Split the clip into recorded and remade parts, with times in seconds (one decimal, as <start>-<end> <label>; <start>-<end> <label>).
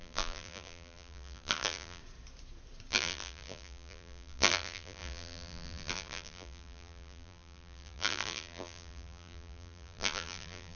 0.0-2.0 remade; 2.0-2.9 recorded; 2.9-10.8 remade